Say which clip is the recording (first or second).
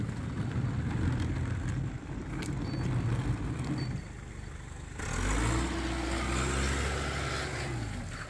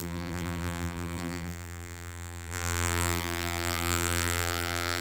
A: first